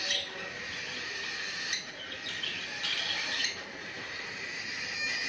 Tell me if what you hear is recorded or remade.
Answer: recorded